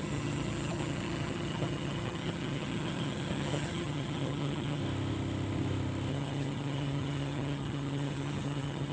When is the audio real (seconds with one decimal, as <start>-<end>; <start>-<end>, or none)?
4.8-6.1